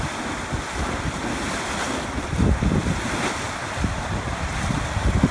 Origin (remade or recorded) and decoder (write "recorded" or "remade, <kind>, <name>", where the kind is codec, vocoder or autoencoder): remade, vocoder, BigVGAN v2